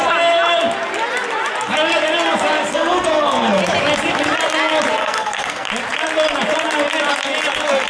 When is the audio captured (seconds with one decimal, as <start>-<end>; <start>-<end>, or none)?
0.0-2.7; 3.6-5.0; 5.7-7.9